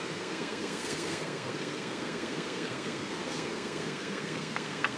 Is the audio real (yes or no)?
no